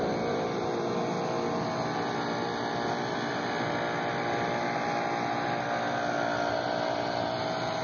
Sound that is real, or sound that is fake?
real